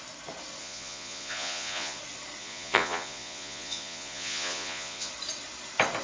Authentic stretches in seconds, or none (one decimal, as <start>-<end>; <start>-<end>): 0.0-0.6; 2.0-2.4; 5.1-6.0